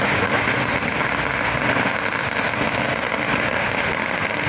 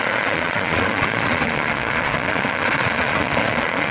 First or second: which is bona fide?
first